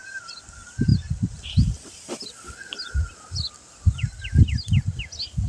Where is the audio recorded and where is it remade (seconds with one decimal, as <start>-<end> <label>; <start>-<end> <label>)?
0.0-5.5 recorded